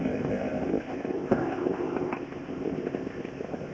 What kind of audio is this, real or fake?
fake